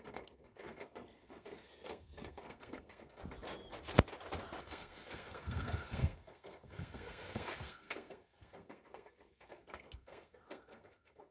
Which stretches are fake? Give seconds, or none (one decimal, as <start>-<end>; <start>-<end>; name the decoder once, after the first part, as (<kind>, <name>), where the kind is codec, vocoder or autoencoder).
0.0-3.2 (codec, SNAC); 4.6-11.3